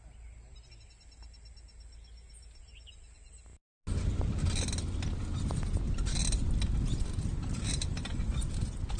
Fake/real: real